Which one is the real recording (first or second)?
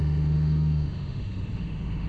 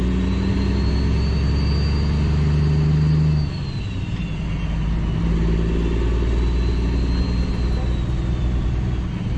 second